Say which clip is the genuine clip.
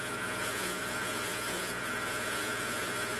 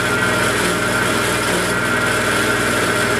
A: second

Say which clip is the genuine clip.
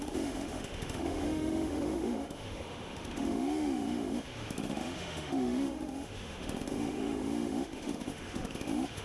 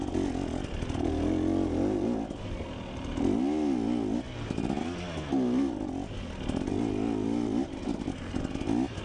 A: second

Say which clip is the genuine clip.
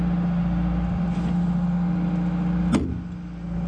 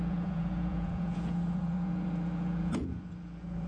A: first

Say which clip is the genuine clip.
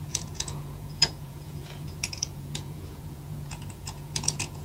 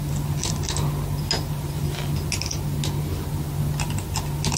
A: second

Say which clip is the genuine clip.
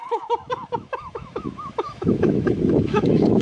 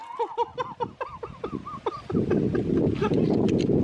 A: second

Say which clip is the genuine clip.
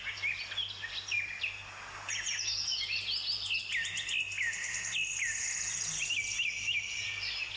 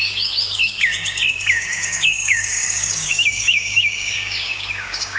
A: first